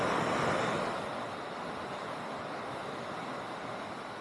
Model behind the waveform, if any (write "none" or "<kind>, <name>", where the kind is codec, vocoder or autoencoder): none